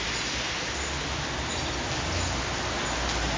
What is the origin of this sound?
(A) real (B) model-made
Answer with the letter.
A